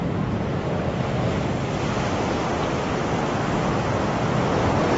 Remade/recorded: recorded